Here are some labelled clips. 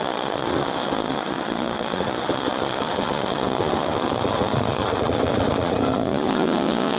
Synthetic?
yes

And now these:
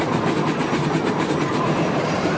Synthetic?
no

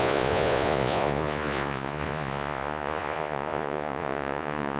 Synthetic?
yes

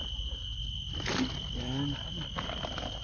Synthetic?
no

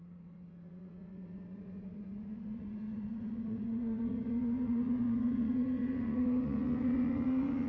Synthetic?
yes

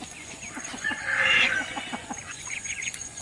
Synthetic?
yes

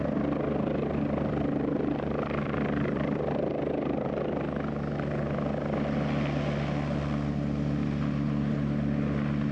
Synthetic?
no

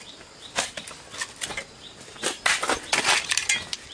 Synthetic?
no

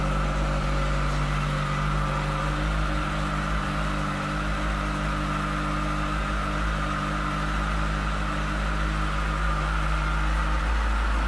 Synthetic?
no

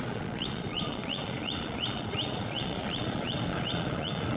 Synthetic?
yes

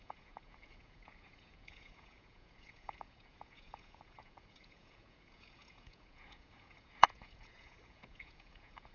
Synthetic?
yes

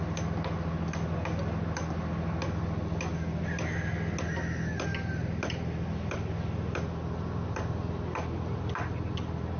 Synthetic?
no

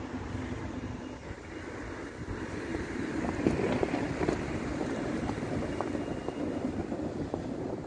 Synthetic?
no